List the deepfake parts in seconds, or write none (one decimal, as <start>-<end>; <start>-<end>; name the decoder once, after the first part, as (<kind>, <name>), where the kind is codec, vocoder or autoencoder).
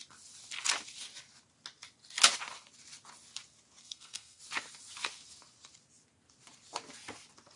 3.8-4.4 (codec, SNAC)